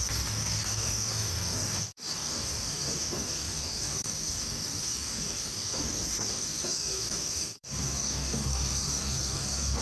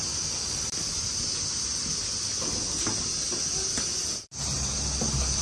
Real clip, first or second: second